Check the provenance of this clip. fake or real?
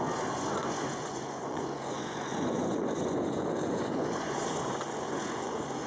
fake